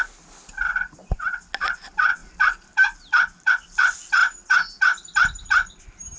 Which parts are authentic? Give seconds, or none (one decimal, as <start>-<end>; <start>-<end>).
0.0-6.2